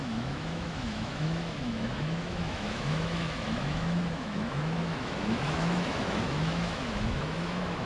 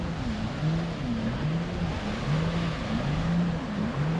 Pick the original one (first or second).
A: second